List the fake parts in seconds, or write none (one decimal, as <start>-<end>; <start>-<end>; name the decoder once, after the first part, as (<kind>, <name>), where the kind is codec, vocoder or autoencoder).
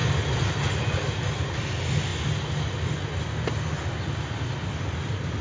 none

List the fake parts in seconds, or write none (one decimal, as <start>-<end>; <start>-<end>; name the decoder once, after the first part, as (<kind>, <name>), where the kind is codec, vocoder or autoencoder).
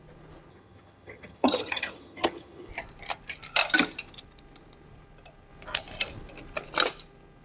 0.5-2.7 (vocoder, HiFi-GAN)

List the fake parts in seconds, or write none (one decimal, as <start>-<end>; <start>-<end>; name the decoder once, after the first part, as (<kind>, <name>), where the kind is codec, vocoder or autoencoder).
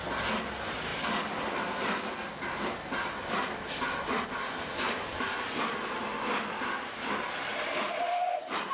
none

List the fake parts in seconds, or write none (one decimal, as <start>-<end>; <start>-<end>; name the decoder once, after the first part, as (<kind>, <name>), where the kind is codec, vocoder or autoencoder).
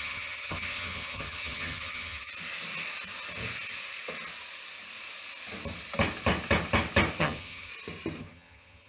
0.0-2.3 (vocoder, HiFi-GAN); 7.2-7.7; 8.2-8.9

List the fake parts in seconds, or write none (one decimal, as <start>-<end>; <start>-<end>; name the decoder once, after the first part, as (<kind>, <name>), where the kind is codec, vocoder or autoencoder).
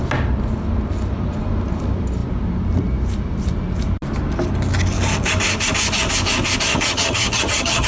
6.7-7.9 (vocoder, HiFi-GAN)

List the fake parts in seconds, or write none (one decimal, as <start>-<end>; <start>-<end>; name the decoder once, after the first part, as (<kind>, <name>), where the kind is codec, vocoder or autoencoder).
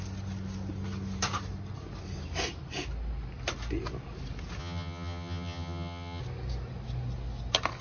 4.6-6.2 (vocoder, HiFi-GAN)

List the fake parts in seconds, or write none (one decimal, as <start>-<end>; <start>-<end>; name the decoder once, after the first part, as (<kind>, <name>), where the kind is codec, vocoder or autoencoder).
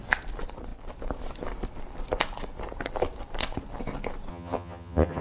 4.3-5.2 (vocoder, HiFi-GAN)